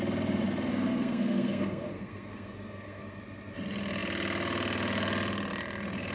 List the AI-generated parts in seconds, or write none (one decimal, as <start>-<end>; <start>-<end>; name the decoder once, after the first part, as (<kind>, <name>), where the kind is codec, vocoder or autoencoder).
0.7-3.2 (codec, SNAC)